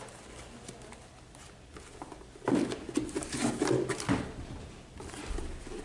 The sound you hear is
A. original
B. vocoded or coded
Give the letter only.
A